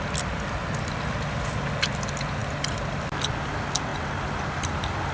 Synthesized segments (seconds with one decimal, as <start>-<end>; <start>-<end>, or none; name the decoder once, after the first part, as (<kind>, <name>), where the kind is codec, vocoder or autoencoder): none